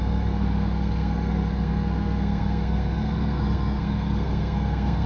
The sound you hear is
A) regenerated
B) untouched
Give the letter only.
A